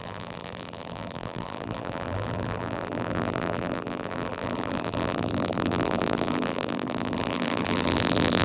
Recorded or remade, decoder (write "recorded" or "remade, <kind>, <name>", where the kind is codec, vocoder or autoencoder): remade, vocoder, BigVGAN v2